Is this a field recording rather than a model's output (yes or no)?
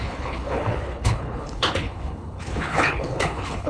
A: no